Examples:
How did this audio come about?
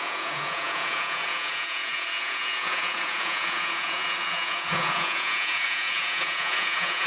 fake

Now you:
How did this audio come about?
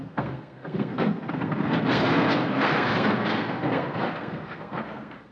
fake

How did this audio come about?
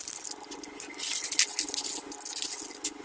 real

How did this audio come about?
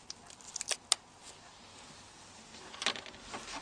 real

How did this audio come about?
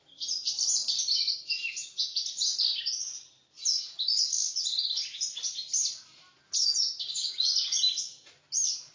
real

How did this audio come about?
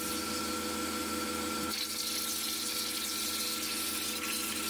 real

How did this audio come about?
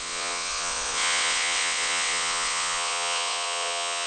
fake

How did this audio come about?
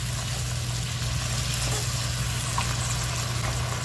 real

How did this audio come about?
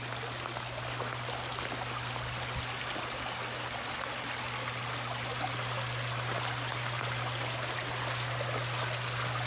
real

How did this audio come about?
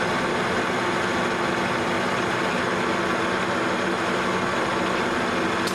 real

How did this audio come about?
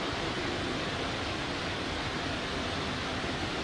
real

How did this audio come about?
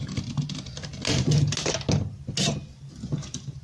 real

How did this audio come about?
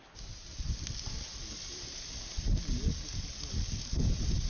real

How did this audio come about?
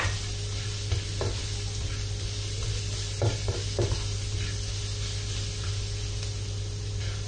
real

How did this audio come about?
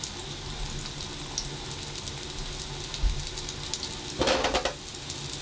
real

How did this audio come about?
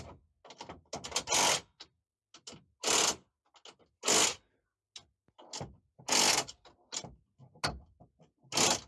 real